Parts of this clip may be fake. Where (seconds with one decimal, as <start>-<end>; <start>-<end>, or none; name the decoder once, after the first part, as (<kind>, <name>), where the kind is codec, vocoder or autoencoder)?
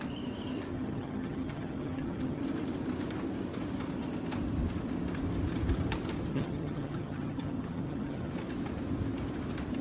0.7-2.4 (vocoder, HiFi-GAN); 6.3-8.3